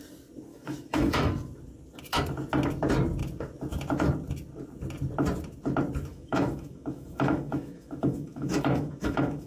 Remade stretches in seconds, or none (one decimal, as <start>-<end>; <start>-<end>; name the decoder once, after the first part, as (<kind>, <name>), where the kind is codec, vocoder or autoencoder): 0.5-1.3 (autoencoder, DAC-VAE); 6.1-9.5

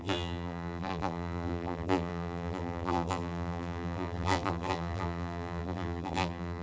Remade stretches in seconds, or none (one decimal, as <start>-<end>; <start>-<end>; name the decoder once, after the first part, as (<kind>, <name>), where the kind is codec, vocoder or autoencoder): 0.0-6.6 (vocoder, BigVGAN v2)

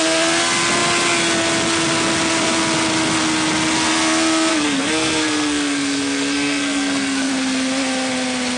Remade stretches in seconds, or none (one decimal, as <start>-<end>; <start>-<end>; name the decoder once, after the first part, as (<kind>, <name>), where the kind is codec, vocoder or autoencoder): 4.5-7.3 (codec, SNAC)

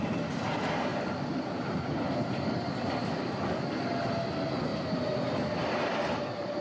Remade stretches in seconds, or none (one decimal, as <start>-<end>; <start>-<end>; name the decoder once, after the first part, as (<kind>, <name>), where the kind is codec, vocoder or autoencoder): none

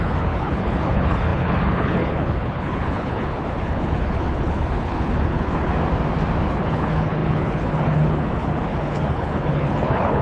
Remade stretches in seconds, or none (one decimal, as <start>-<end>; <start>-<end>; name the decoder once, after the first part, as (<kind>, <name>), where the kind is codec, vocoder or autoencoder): 0.0-5.7 (codec, HILCodec); 6.5-10.2

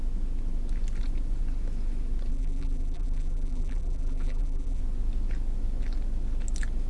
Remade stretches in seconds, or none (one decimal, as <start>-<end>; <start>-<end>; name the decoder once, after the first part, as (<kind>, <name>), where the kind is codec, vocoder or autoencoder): 2.3-4.8 (vocoder, BigVGAN v2)